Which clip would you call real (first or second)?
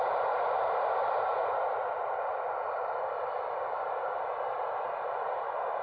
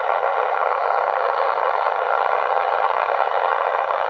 first